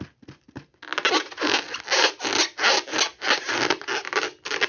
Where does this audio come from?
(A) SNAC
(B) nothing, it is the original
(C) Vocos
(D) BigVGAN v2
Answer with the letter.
B